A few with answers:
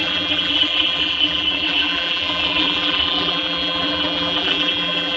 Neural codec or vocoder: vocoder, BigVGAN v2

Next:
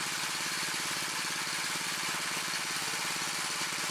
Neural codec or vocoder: vocoder, BigVGAN v2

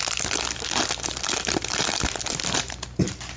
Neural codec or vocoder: vocoder, BigVGAN v2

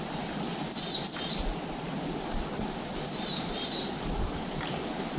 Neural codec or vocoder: vocoder, BigVGAN v2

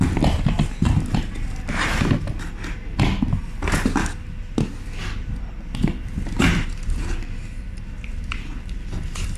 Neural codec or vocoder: none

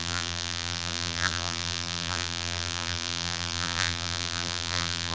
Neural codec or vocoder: vocoder, BigVGAN v2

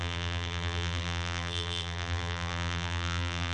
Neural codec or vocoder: vocoder, BigVGAN v2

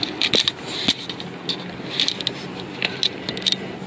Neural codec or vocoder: none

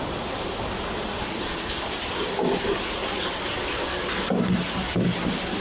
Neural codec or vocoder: none